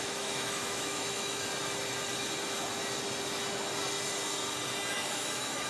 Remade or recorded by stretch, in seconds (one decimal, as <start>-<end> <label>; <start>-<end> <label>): 0.0-1.5 remade; 1.5-4.9 recorded; 4.9-5.7 remade